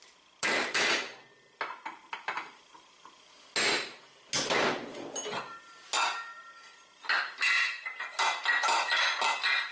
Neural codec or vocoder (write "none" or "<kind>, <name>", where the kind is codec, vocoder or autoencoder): none